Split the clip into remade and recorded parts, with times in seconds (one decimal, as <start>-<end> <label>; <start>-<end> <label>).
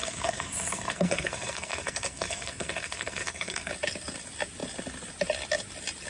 0.0-3.7 remade; 3.7-6.1 recorded